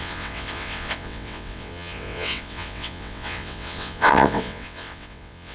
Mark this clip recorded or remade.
remade